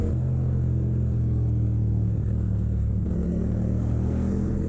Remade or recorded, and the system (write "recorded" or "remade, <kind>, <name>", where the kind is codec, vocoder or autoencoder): remade, codec, SNAC